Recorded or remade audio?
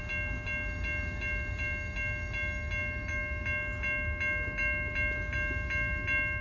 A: recorded